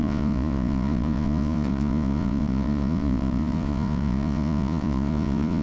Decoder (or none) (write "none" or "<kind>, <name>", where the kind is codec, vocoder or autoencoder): vocoder, Vocos